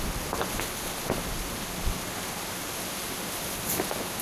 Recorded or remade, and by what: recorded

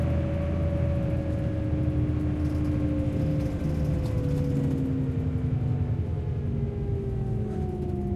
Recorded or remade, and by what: recorded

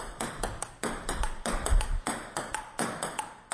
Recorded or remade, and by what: recorded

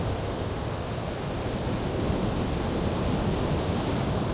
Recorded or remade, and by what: recorded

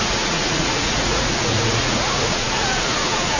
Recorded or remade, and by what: remade, vocoder, Vocos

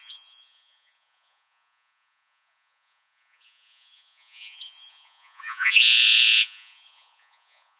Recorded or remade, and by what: remade, vocoder, Vocos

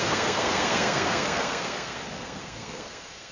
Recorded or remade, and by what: remade, codec, SNAC